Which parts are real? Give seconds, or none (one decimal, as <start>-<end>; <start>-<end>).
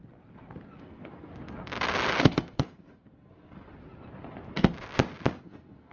0.0-0.8; 1.3-2.2; 3.7-5.4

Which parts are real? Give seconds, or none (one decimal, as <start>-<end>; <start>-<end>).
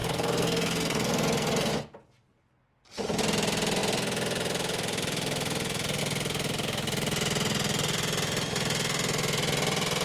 1.7-10.0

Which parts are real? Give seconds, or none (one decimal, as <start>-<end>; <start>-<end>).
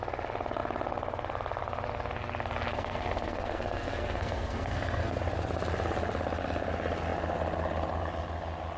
0.0-2.7; 5.2-8.8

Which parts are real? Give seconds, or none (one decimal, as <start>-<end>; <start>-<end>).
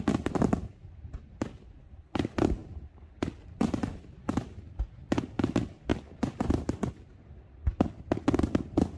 0.0-9.0